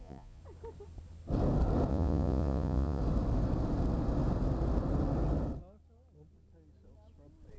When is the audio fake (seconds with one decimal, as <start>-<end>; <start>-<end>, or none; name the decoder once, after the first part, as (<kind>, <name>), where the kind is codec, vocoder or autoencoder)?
0.0-0.4 (vocoder, Vocos); 1.9-3.0